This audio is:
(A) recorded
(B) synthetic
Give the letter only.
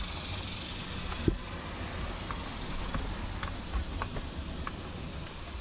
A